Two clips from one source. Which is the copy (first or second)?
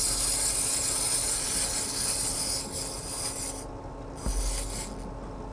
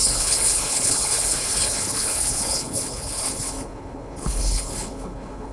second